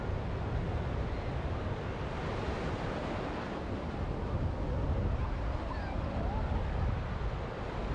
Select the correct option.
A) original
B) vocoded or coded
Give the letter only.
A